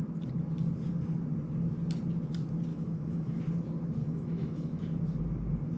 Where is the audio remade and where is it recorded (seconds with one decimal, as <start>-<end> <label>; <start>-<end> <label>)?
0.0-2.7 recorded; 2.7-3.4 remade; 3.4-4.0 recorded; 4.0-4.8 remade; 4.8-5.8 recorded